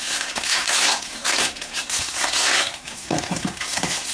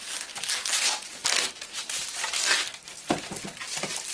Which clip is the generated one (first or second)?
first